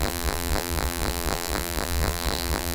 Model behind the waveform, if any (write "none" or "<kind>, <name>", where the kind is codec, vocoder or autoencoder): vocoder, BigVGAN v2